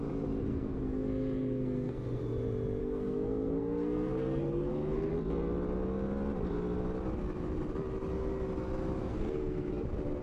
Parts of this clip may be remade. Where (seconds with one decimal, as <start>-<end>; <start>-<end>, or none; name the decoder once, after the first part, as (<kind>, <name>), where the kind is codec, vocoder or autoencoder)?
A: 0.5-2.2 (codec, SNAC); 2.8-5.1; 9.0-9.7